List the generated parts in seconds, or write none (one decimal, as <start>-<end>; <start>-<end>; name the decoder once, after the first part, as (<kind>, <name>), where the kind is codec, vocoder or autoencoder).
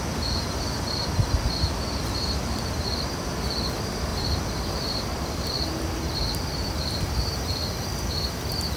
4.1-8.1 (vocoder, BigVGAN v2)